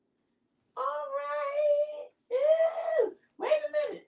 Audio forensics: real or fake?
real